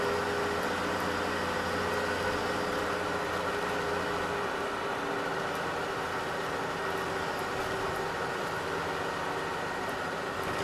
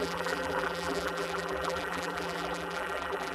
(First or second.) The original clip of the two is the first